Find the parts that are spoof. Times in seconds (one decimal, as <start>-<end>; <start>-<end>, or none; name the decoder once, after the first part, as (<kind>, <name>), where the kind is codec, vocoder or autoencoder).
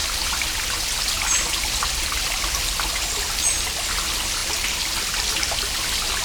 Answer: none